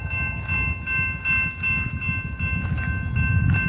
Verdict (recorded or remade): recorded